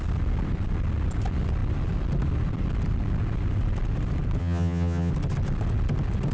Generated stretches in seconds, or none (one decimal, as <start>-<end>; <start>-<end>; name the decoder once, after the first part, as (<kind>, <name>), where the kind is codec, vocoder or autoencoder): 4.4-5.1 (vocoder, HiFi-GAN)